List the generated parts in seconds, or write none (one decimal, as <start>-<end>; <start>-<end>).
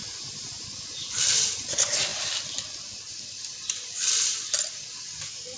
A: 0.0-1.4; 2.1-5.6